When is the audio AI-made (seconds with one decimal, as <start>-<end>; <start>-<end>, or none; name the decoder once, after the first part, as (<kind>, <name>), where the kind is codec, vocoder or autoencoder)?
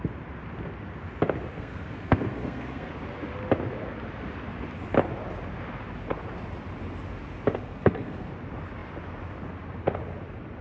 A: 1.5-2.9 (codec, SNAC); 7.6-8.3